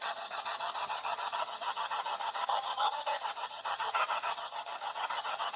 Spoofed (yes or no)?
yes